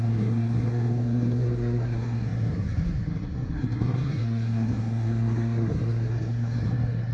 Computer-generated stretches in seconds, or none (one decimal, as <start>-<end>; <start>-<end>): 0.0-7.1